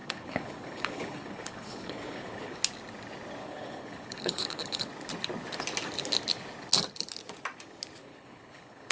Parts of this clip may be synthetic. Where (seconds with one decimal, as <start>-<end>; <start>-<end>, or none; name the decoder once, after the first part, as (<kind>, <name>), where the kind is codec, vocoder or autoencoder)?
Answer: 0.0-2.6 (codec, HILCodec); 3.4-4.9; 8.0-8.9